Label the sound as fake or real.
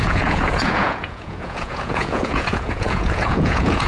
fake